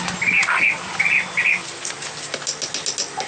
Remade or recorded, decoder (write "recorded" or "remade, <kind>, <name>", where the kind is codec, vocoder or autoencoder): recorded